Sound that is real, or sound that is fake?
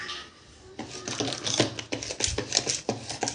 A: real